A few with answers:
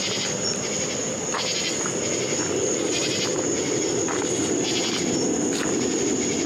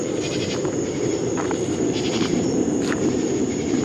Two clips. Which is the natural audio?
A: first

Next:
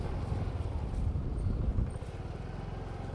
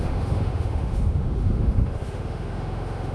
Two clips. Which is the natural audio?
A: first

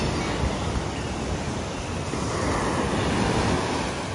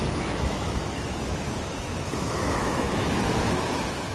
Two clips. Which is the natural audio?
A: first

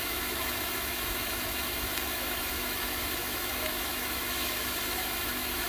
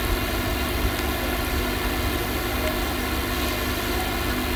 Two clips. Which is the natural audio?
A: second